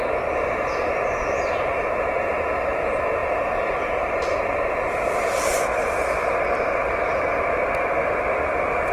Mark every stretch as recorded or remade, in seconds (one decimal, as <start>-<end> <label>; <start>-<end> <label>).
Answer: 0.0-3.2 recorded; 3.2-5.1 remade; 5.1-8.9 recorded